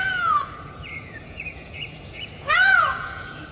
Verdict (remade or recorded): remade